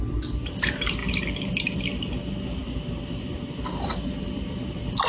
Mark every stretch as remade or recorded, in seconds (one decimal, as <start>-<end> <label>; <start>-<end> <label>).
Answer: 0.0-2.6 recorded; 2.6-3.9 remade; 3.9-5.1 recorded